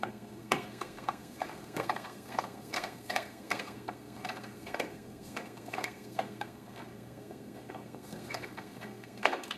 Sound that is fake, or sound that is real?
fake